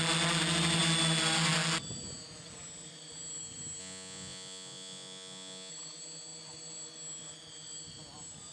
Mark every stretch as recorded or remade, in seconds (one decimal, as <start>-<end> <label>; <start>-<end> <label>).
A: 0.0-3.8 recorded; 3.8-5.7 remade; 5.7-8.5 recorded